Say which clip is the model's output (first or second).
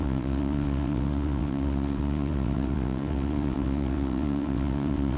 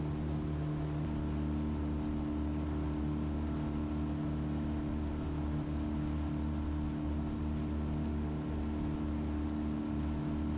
first